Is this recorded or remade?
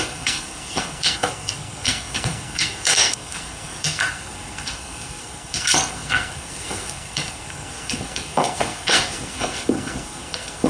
remade